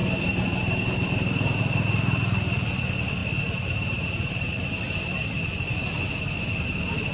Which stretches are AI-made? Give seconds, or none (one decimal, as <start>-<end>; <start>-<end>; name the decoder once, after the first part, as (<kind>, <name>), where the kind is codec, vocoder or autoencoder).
0.0-1.6 (vocoder, BigVGAN v2); 3.2-4.6